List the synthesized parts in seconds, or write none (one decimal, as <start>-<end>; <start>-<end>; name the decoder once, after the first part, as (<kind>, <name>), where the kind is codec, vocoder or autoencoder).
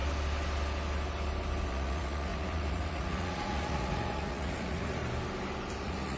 1.7-5.0 (vocoder, Vocos); 5.8-6.2